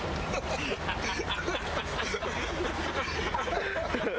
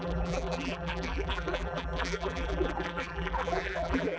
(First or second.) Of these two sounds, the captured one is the first